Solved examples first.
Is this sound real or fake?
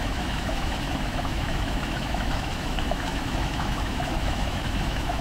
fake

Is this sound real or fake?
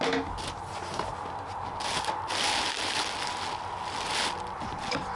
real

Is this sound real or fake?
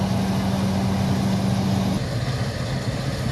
real